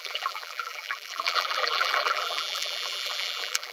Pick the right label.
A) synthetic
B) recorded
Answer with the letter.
A